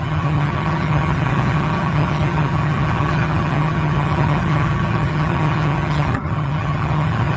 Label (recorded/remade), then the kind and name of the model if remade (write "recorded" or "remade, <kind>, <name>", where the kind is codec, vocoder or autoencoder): remade, vocoder, HiFi-GAN